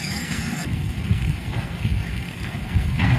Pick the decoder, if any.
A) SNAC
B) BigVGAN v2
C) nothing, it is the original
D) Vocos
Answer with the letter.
A